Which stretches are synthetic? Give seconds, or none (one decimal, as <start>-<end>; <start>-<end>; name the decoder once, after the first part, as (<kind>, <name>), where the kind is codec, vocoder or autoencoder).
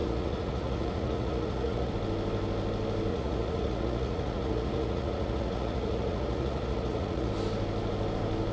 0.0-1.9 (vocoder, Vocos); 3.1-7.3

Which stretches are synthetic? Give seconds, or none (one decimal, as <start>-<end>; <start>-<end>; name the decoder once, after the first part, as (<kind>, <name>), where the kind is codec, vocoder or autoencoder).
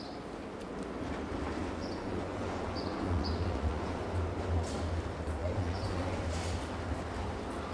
1.6-4.0 (vocoder, Vocos); 5.4-6.2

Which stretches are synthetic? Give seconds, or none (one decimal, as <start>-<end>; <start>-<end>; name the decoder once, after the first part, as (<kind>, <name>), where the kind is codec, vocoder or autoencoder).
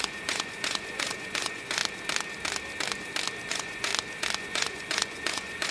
0.0-1.8 (vocoder, Vocos); 3.5-3.9; 4.4-5.7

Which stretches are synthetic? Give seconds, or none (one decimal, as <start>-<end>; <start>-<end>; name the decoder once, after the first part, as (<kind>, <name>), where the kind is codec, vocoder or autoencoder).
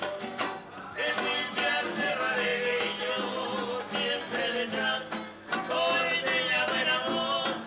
none